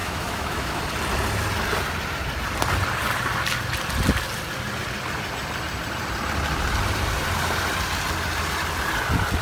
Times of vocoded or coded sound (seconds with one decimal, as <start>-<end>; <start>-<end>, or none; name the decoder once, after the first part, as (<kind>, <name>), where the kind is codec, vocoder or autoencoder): 0.0-0.8 (autoencoder, DAC-VAE)